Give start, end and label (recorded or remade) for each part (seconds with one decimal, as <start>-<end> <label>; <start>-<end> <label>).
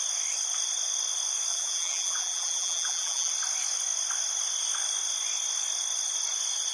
0.0-1.5 recorded; 1.5-3.3 remade; 3.3-6.7 recorded